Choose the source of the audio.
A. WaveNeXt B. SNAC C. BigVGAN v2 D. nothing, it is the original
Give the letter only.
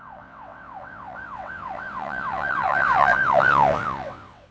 A